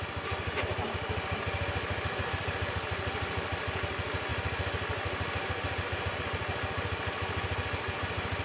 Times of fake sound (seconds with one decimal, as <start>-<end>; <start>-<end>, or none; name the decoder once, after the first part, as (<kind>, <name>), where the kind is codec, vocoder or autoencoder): none